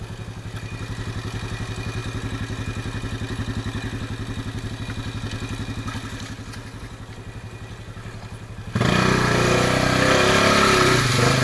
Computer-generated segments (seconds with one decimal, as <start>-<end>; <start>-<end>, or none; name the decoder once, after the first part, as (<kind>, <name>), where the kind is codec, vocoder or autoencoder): none